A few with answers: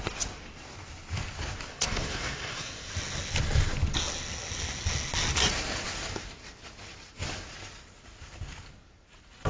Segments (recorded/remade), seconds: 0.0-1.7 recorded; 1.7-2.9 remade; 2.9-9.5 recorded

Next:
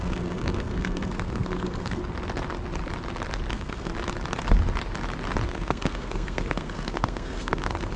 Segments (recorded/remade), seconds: 0.0-2.0 remade; 2.0-3.5 recorded; 3.5-3.9 remade; 3.9-5.5 recorded; 5.5-8.0 remade

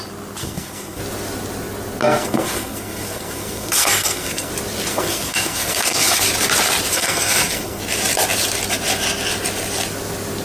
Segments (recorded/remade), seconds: 0.0-0.4 recorded; 0.4-1.0 remade; 1.0-2.0 recorded; 2.0-4.5 remade; 4.5-4.9 recorded; 4.9-6.2 remade; 6.2-6.9 recorded; 6.9-7.8 remade; 7.8-10.4 recorded

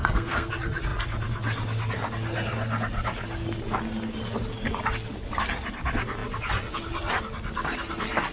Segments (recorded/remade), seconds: 0.0-0.5 remade; 0.5-8.3 recorded

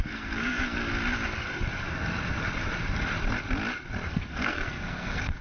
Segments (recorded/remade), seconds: 0.0-0.9 remade; 0.9-4.1 recorded; 4.1-5.4 remade

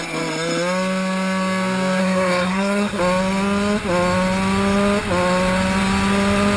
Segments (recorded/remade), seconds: 0.0-2.0 recorded; 2.0-3.0 remade; 3.0-6.6 recorded

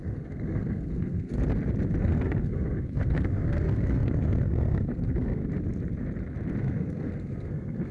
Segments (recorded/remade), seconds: 0.0-1.3 remade; 1.3-2.0 recorded; 2.0-5.4 remade; 5.4-6.6 recorded; 6.6-7.9 remade